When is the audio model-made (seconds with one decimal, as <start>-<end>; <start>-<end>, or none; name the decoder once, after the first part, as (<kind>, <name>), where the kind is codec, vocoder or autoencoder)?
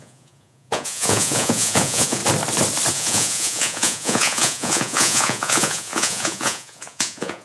0.0-2.2 (vocoder, Vocos); 2.9-7.4